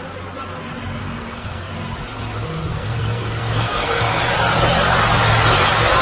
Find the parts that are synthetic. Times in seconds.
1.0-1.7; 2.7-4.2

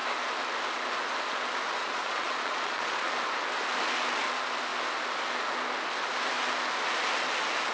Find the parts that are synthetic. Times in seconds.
1.8-3.1

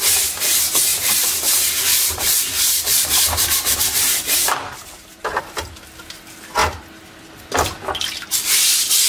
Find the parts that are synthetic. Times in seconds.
0.9-5.4

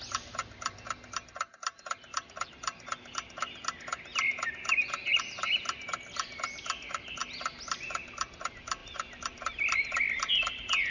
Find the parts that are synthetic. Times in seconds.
8.8-9.4